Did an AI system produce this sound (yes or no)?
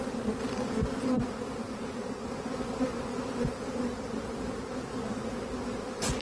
yes